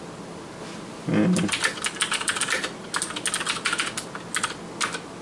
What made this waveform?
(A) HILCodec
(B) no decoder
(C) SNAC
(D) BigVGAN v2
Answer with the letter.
B